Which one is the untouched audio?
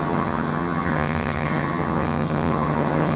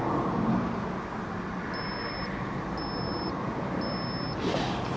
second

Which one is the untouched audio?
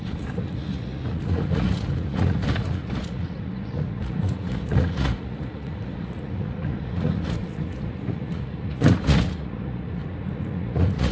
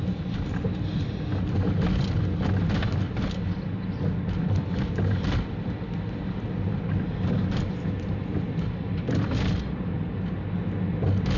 second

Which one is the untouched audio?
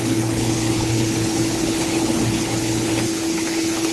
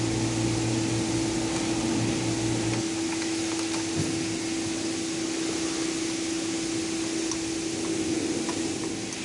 second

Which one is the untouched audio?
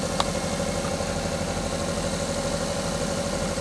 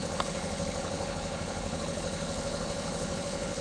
first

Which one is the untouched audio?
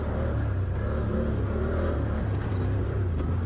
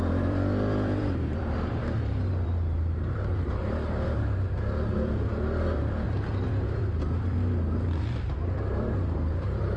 first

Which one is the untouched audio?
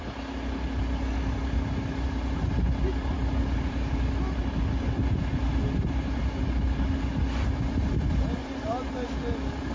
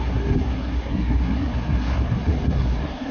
first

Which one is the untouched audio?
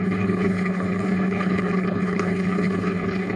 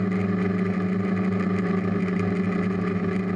second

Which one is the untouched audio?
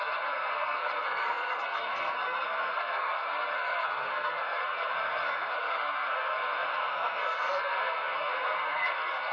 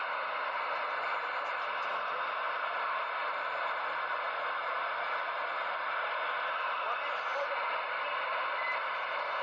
second